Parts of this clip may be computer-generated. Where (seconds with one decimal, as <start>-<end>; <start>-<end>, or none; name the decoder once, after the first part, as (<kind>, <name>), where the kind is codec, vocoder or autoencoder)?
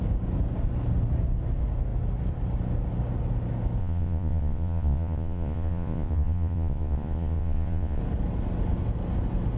3.8-8.0 (vocoder, Vocos)